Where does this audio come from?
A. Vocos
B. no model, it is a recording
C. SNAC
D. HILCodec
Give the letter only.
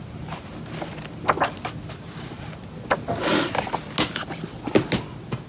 B